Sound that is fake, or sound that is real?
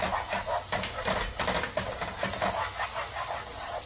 real